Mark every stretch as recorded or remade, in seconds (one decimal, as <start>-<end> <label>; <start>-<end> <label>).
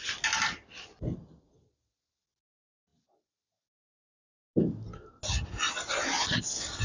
0.0-6.8 recorded